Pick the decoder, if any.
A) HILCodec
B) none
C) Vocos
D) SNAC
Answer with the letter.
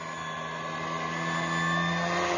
B